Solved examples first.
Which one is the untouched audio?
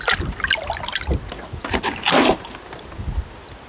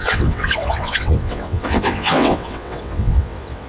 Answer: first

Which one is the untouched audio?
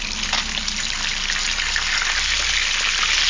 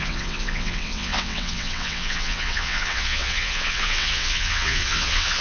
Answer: first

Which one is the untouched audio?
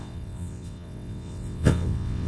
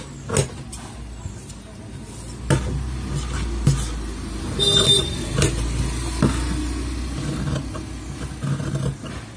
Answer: second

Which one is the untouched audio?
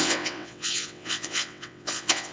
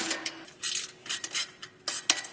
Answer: second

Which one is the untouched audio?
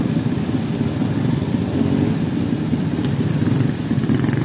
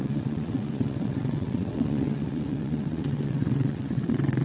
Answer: first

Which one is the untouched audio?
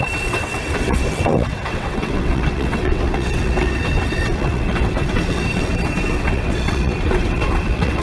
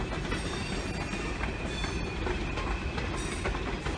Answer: second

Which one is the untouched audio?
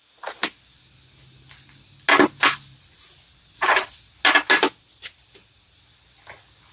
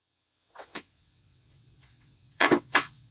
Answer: first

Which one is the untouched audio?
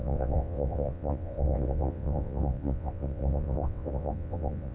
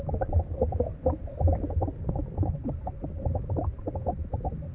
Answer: second